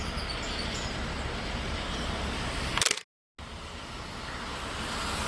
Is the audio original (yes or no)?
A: yes